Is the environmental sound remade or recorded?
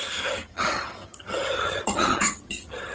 remade